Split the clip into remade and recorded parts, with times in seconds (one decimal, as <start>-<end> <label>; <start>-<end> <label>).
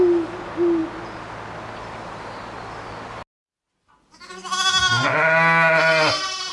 0.0-6.5 recorded